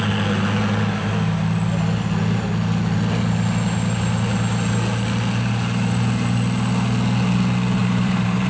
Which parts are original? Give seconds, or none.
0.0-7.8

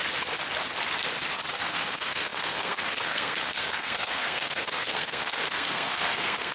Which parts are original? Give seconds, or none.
0.0-1.5